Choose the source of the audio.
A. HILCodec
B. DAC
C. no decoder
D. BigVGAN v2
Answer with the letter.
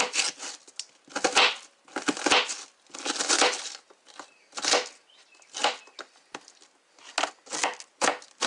C